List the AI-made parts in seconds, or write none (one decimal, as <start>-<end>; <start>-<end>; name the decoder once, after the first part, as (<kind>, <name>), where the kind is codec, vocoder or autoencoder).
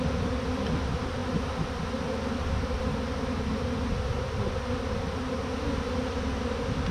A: none